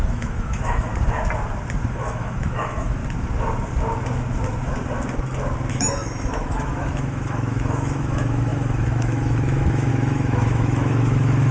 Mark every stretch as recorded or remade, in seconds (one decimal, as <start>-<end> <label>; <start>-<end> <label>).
0.0-0.9 remade; 0.9-1.9 recorded; 1.9-3.0 remade; 3.0-5.7 recorded; 5.7-11.5 remade